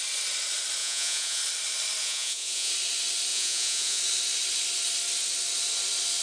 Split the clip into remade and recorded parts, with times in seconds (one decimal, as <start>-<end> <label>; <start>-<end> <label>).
0.0-0.8 recorded; 0.8-1.4 remade; 1.4-2.0 recorded; 2.0-2.7 remade; 2.7-3.3 recorded; 3.3-4.0 remade; 4.0-6.2 recorded